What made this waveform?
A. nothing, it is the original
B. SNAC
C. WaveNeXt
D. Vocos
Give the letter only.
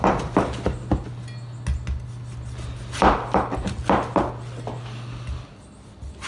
A